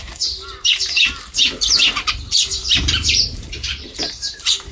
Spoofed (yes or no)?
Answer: yes